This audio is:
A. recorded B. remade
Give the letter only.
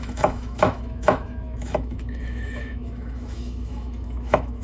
B